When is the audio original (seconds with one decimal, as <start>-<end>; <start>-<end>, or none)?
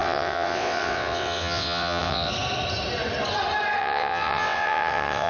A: 2.3-3.8